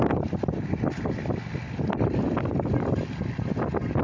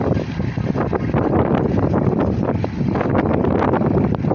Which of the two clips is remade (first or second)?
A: second